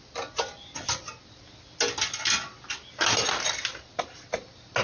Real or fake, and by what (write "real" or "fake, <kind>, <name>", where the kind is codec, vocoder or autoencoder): real